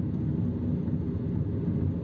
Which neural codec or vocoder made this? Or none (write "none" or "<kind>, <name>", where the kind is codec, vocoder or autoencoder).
none